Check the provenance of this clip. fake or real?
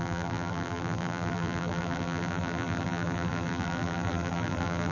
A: fake